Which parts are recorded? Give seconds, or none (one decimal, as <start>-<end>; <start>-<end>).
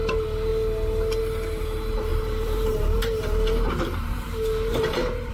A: 0.0-2.1